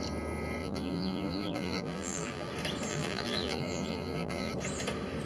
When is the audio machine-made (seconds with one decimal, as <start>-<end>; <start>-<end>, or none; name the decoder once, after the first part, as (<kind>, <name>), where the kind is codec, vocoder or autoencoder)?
0.6-2.5 (vocoder, BigVGAN v2); 2.9-4.5